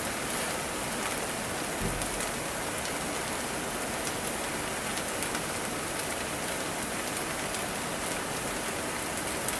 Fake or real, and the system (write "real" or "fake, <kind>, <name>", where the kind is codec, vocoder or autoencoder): real